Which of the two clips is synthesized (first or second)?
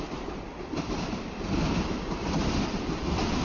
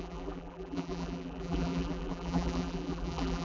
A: second